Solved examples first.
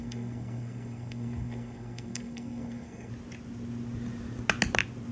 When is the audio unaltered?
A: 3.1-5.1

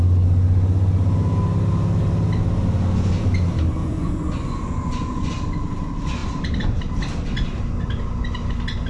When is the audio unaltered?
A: 0.0-3.8; 5.3-8.9

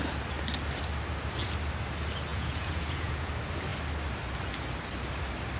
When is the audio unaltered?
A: 0.0-2.3; 3.3-5.6

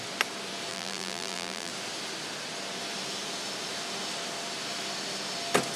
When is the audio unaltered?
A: 0.0-0.7; 1.7-5.8

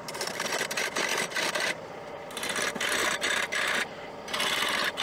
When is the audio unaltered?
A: 0.0-1.1; 4.1-5.0

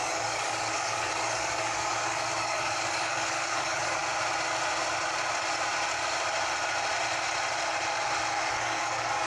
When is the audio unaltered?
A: 4.0-8.5

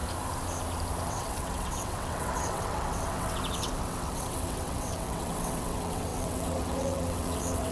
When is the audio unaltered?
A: 0.0-1.1